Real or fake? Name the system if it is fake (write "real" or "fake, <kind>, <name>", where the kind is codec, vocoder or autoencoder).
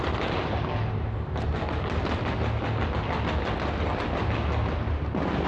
real